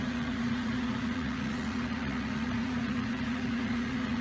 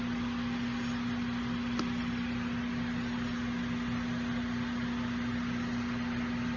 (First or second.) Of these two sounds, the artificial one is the first